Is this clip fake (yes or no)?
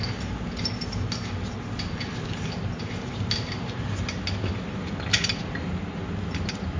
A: no